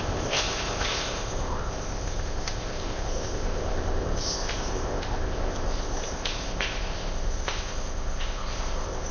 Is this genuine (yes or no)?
no